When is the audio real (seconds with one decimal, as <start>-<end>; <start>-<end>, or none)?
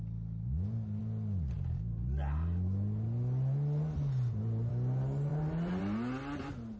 0.0-6.8